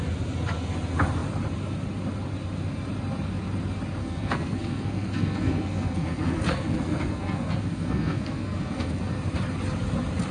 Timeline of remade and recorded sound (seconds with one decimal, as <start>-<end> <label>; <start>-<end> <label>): 0.0-4.0 recorded; 4.0-9.1 remade; 9.1-10.3 recorded